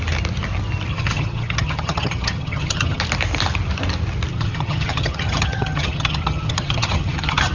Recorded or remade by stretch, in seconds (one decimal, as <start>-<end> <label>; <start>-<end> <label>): 0.0-0.9 recorded; 0.9-3.0 remade; 3.0-4.3 recorded; 4.3-7.5 remade

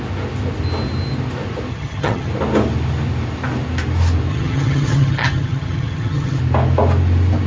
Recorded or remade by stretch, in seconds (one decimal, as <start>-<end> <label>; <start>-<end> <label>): 0.0-1.7 recorded; 1.7-2.3 remade; 2.3-4.3 recorded; 4.3-6.4 remade; 6.4-7.5 recorded

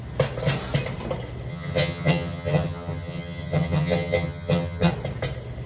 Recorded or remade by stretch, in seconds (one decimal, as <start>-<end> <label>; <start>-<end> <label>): 0.0-1.5 recorded; 1.5-4.9 remade; 4.9-5.7 recorded

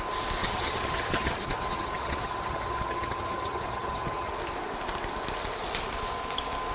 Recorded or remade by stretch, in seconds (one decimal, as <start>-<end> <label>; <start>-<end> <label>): 0.0-0.4 recorded; 0.4-4.3 remade; 4.3-6.7 recorded

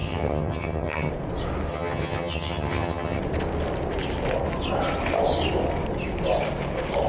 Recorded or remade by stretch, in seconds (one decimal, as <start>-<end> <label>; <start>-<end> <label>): 0.0-1.1 remade; 1.1-1.7 recorded; 1.7-3.2 remade; 3.2-7.1 recorded

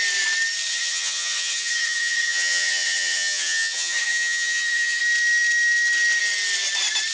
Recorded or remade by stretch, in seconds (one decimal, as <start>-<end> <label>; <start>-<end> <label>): 0.0-0.7 recorded; 0.7-5.0 remade; 5.0-7.1 recorded